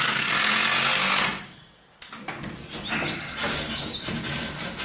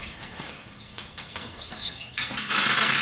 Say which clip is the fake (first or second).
second